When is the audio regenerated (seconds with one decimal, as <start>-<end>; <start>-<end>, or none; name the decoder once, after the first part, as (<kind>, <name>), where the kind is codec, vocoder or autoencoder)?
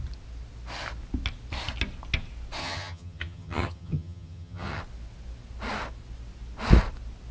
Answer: 2.6-4.8 (vocoder, HiFi-GAN)